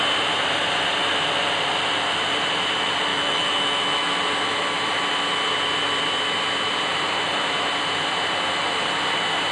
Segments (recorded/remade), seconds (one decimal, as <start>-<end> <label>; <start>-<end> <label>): 0.0-3.1 recorded; 3.1-4.2 remade; 4.2-9.5 recorded